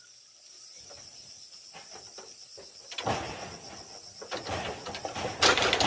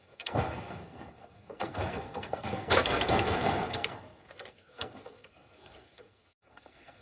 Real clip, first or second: first